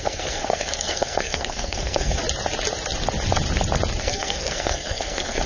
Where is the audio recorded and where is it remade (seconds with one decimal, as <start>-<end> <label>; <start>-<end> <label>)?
0.0-2.2 remade; 2.2-4.0 recorded; 4.0-5.5 remade